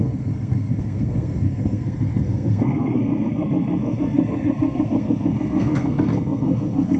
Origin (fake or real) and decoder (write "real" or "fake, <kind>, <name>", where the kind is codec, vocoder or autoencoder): fake, codec, SNAC